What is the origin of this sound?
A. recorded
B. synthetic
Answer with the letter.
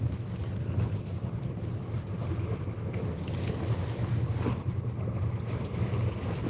A